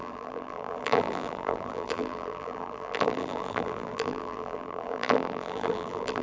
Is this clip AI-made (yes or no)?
yes